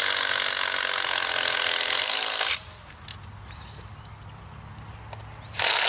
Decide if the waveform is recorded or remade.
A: recorded